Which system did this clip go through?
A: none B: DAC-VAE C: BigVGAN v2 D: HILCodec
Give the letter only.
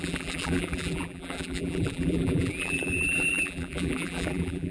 C